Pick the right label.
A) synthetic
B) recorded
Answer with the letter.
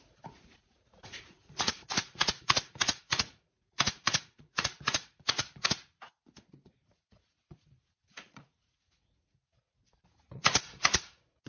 A